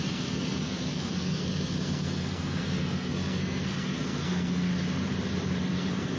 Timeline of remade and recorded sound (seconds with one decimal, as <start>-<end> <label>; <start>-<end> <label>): 0.0-4.7 remade; 4.7-5.6 recorded; 5.6-6.2 remade